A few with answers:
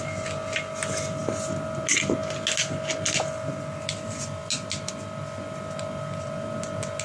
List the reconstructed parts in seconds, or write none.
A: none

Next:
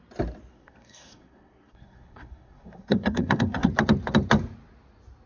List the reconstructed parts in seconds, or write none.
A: 0.5-3.7 (codec, SNAC)

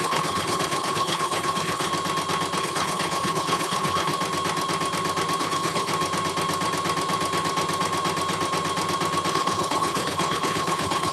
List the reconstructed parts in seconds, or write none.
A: 0.0-1.9 (codec, HILCodec); 2.6-4.1; 5.4-5.9; 9.3-11.1

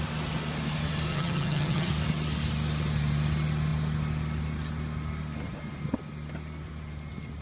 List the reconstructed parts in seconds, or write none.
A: 1.1-1.9 (vocoder, HiFi-GAN)

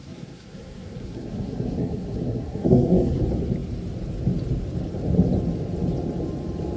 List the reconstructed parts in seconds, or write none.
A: 0.0-3.2 (codec, SNAC)

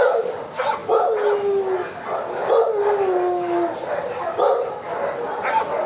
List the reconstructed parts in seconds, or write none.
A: none